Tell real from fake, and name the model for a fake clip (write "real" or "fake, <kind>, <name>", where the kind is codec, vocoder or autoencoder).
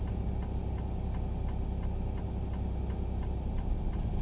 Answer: real